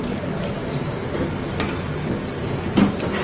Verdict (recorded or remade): recorded